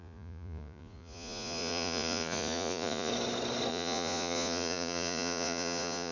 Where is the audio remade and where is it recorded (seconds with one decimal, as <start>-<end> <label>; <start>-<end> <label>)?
0.0-3.1 remade; 3.1-3.7 recorded; 3.7-6.1 remade